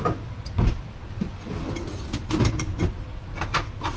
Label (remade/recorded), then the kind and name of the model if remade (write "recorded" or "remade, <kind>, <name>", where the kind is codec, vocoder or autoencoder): recorded